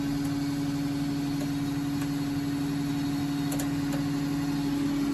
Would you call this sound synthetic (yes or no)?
no